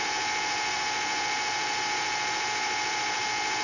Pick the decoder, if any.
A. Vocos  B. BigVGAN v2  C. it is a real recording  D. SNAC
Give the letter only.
B